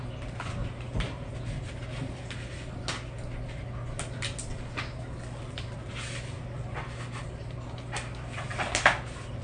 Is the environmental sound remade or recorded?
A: recorded